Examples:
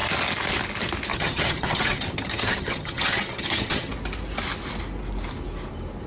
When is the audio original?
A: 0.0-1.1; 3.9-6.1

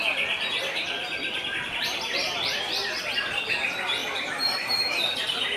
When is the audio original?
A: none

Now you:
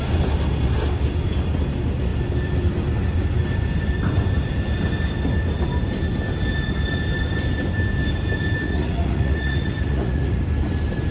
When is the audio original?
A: 0.0-8.6; 10.4-11.1

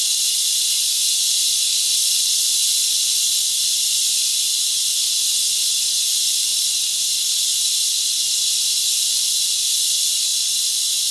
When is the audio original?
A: 0.0-11.1

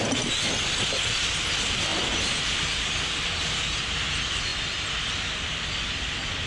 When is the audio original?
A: 0.0-6.5